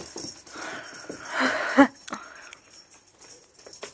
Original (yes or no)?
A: yes